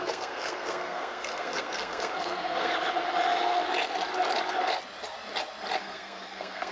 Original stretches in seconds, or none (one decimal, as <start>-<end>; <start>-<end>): 2.7-5.8